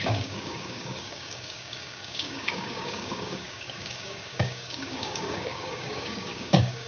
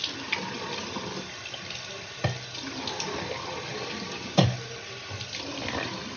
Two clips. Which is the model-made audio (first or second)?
first